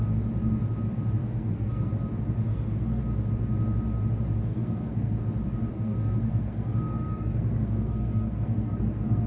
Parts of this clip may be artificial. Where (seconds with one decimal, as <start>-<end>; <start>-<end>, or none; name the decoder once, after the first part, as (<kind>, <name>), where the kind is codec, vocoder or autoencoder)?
1.2-1.9 (codec, SNAC); 2.5-3.0; 4.5-5.2; 5.7-9.3